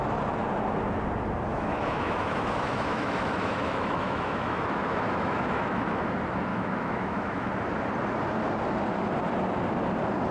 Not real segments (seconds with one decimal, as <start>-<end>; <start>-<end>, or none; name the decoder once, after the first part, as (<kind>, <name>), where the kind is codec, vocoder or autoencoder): 1.5-6.1 (autoencoder, DAC-VAE); 6.5-7.5